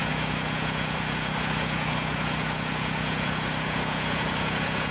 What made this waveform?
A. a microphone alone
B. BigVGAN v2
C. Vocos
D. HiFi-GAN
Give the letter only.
C